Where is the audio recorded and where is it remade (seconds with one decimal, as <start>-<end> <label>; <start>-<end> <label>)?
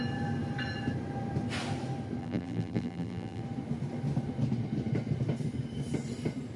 0.0-2.2 recorded; 2.2-3.4 remade; 3.4-6.6 recorded